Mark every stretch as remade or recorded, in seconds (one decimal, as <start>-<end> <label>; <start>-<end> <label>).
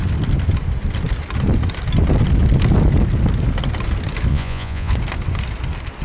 0.0-4.3 recorded; 4.3-4.9 remade; 4.9-6.0 recorded